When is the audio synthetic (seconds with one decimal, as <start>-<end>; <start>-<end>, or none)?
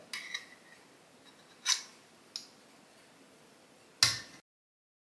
none